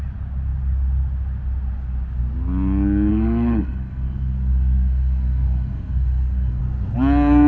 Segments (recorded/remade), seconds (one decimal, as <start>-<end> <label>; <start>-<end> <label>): 0.0-3.1 recorded; 3.1-6.6 remade; 6.6-7.5 recorded